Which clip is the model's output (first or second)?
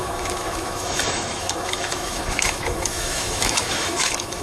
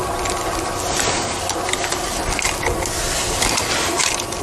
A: first